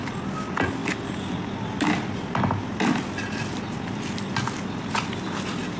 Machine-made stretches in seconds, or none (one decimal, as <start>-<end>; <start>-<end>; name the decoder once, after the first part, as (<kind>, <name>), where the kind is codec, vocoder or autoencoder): none